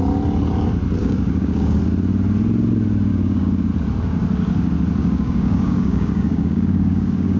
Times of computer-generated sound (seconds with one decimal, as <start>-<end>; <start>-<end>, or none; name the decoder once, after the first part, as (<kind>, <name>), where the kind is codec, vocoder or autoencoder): 1.0-1.8 (codec, DAC); 3.1-3.7; 5.0-7.4